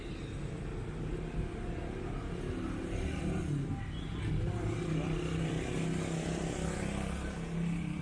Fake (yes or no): no